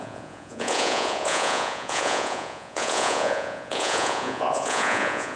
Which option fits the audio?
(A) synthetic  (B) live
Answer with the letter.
A